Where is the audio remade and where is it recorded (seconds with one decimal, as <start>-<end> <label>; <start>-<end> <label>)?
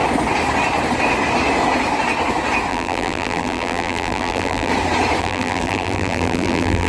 0.0-2.7 recorded; 2.7-4.7 remade; 4.7-5.2 recorded; 5.2-6.9 remade